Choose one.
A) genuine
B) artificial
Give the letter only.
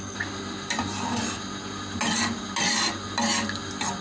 A